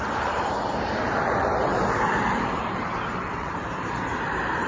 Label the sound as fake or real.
fake